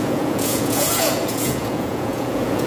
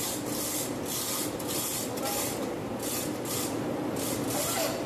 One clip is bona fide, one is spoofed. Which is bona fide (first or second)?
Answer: second